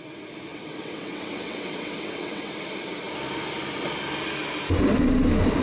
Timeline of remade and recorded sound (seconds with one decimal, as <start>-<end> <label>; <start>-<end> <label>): 0.0-0.5 recorded; 0.5-2.5 remade; 2.5-5.6 recorded